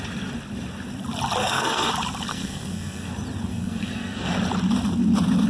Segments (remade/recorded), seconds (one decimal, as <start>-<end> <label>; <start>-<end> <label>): 0.0-1.4 recorded; 1.4-1.9 remade; 1.9-2.3 recorded; 2.3-3.1 remade; 3.1-3.5 recorded; 3.5-4.3 remade; 4.3-5.5 recorded